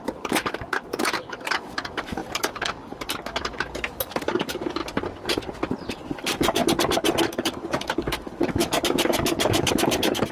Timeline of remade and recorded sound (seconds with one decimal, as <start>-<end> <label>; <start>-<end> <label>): 0.0-4.8 remade; 4.8-5.9 recorded; 5.9-6.6 remade; 6.6-7.2 recorded; 7.2-10.3 remade